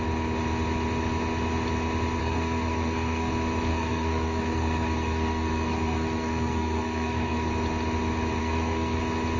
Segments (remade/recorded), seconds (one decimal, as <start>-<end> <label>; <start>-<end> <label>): 0.0-2.2 recorded; 2.2-3.3 remade; 3.3-3.7 recorded; 3.7-7.5 remade; 7.5-8.4 recorded; 8.4-9.0 remade; 9.0-9.4 recorded